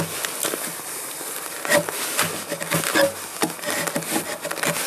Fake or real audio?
real